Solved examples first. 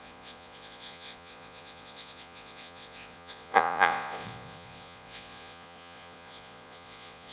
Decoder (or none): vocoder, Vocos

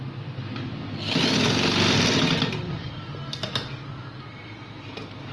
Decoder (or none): none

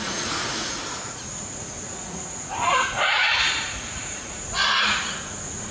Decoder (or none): vocoder, Vocos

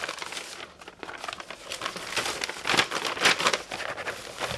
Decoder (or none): none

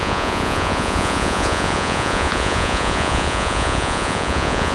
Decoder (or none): vocoder, Vocos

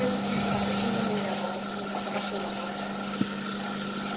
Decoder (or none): none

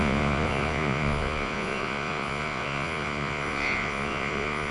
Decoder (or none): vocoder, Vocos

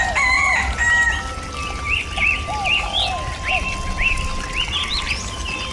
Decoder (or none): none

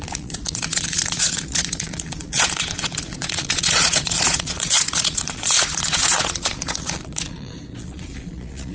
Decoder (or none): vocoder, Vocos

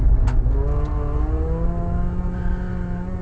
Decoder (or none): none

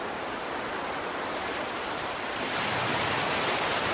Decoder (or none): none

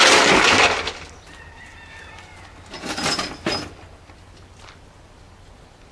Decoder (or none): none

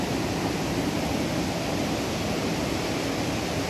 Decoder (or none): none